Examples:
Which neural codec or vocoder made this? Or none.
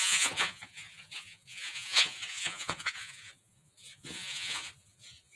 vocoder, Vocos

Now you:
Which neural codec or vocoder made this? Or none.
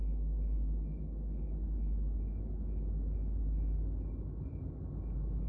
none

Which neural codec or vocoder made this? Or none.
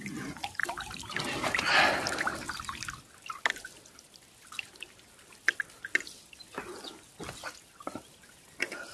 none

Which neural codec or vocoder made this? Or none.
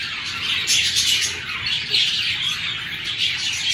none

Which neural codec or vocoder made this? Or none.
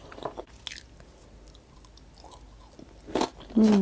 none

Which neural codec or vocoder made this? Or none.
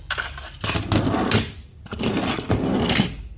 none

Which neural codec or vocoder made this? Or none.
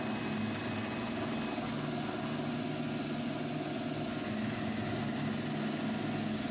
none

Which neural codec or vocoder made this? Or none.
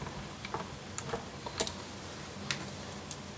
none